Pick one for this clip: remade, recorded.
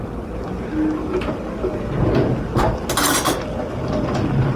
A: recorded